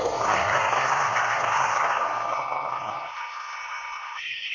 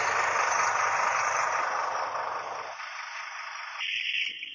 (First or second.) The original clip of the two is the second